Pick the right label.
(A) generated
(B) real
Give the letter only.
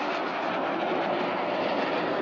B